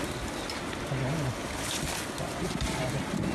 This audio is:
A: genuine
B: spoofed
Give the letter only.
A